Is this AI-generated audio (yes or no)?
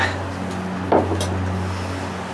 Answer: no